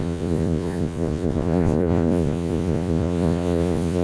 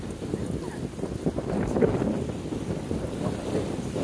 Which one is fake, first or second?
first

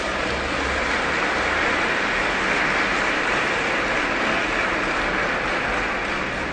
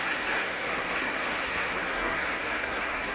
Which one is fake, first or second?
second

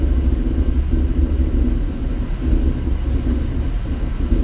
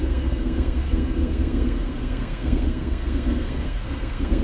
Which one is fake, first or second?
second